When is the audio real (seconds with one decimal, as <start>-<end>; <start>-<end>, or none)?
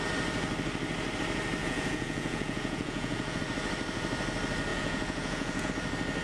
0.0-1.6; 3.4-4.7; 5.7-6.2